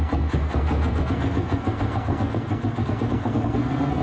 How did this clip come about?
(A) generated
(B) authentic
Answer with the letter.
A